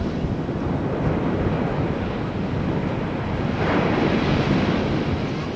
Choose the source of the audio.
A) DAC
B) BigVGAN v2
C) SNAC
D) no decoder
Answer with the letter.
D